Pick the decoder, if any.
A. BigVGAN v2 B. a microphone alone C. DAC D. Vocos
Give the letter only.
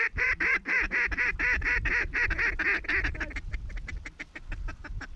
A